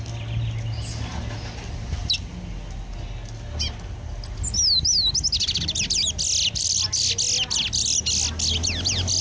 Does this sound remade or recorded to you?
recorded